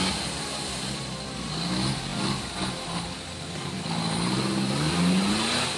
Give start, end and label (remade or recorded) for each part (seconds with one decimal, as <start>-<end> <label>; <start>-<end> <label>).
0.0-5.8 recorded